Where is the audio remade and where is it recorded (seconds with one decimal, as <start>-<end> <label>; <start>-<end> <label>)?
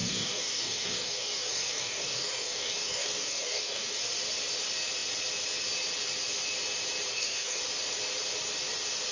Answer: 0.0-4.0 remade; 4.0-7.1 recorded; 7.1-7.6 remade; 7.6-9.1 recorded